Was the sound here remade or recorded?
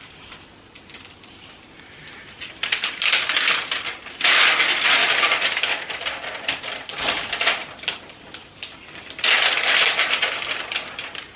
remade